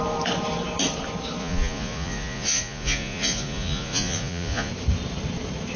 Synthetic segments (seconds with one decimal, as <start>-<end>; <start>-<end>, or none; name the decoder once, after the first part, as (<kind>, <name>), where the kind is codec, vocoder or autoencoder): 1.4-4.7 (vocoder, Vocos)